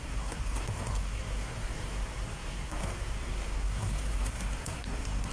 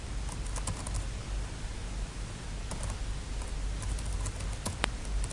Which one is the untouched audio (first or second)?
second